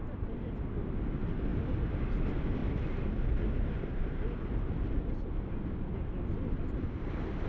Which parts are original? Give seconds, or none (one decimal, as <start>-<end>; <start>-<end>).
2.6-3.3